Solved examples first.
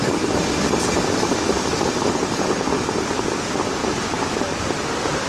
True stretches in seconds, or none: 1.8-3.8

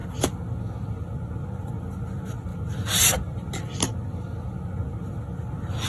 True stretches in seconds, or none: 0.0-5.9

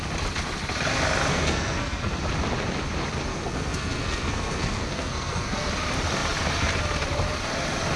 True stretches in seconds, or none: 0.0-1.3; 2.2-3.3; 5.7-8.0

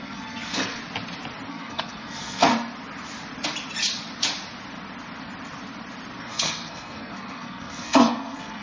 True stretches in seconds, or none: 0.8-1.5; 2.5-6.2

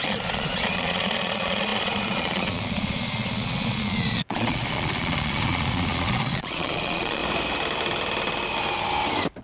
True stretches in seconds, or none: 7.2-9.4

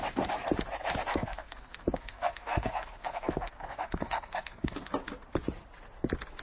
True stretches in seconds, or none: 0.0-1.1; 4.9-6.4